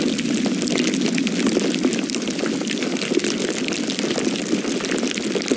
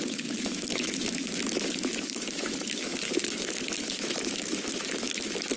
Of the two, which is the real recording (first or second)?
first